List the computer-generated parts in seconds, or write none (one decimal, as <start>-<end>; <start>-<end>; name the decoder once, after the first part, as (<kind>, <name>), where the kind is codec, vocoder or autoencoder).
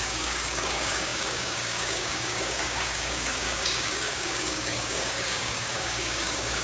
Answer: 0.0-6.6 (codec, DAC)